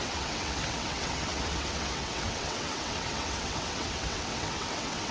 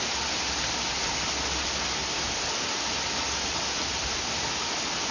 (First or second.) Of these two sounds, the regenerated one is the first